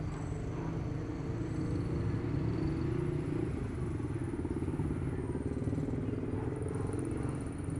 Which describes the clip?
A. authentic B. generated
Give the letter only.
A